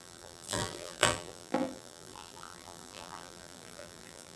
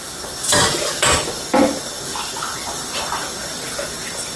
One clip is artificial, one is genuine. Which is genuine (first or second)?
second